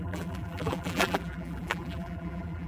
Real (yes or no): no